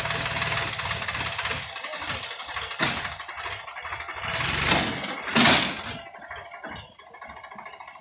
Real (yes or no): yes